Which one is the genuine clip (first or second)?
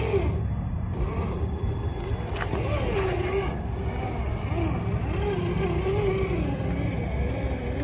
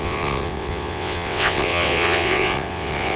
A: first